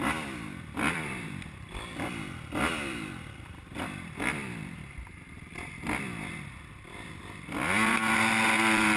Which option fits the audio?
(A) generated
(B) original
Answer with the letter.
A